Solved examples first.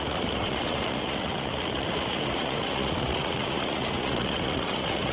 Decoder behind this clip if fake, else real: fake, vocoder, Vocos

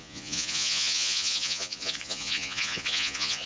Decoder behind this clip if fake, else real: fake, vocoder, Vocos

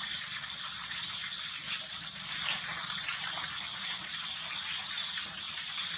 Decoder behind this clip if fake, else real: real